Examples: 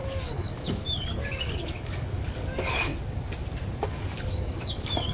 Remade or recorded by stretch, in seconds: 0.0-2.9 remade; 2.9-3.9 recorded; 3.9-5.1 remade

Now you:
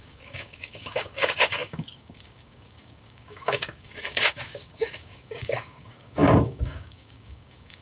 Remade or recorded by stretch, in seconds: 0.0-7.8 remade

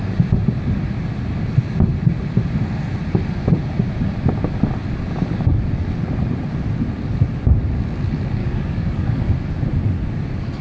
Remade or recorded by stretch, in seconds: 0.0-8.4 recorded; 8.4-9.3 remade; 9.3-10.6 recorded

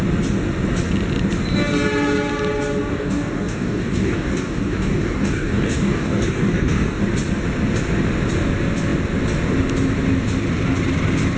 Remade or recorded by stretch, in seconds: 0.0-2.9 recorded; 2.9-7.0 remade; 7.0-11.4 recorded

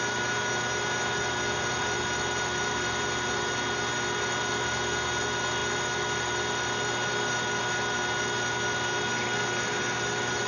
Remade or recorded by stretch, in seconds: 0.0-10.5 recorded

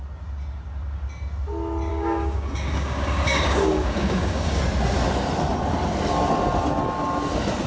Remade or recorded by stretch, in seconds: 0.0-1.9 recorded; 1.9-4.6 remade; 4.6-7.7 recorded

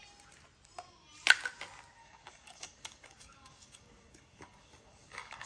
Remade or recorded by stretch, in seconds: 0.0-2.0 recorded; 2.0-5.5 remade